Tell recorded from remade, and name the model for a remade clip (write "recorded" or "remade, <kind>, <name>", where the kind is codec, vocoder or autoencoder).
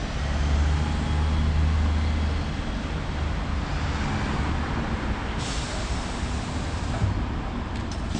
recorded